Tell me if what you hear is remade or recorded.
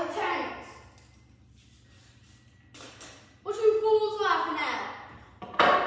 recorded